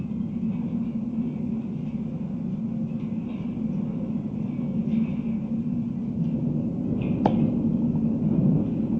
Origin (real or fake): real